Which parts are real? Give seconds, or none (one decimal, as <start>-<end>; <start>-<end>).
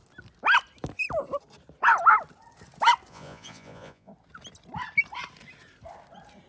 0.0-3.1; 4.1-6.5